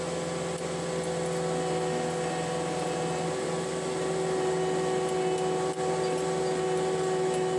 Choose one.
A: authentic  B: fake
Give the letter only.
A